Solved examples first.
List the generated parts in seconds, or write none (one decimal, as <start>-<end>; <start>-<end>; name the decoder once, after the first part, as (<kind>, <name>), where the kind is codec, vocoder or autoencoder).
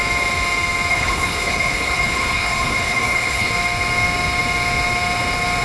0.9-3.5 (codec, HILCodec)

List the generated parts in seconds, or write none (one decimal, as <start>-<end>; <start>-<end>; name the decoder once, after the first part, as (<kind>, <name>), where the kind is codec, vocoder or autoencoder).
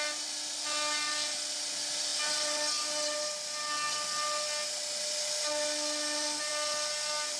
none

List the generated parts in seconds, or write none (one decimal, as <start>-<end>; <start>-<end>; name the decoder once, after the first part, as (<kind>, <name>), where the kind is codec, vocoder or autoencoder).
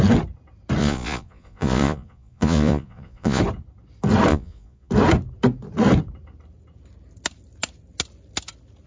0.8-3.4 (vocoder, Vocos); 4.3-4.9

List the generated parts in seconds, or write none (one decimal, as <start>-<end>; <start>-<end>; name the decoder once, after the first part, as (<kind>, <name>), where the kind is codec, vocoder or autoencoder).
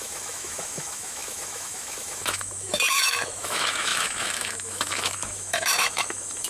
0.0-6.5 (autoencoder, DAC-VAE)